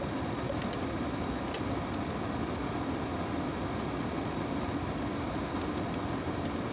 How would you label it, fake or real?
real